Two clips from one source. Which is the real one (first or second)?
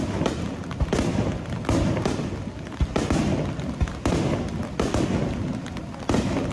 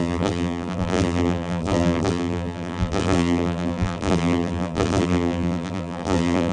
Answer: first